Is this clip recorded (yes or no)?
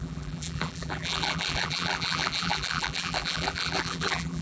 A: no